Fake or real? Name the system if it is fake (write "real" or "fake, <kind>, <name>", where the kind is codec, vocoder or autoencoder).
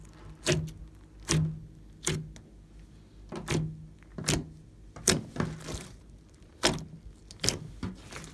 real